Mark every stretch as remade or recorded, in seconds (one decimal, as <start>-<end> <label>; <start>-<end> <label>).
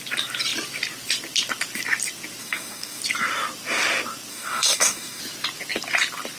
0.0-2.4 recorded; 2.4-3.0 remade; 3.0-4.3 recorded; 4.3-5.2 remade; 5.2-6.4 recorded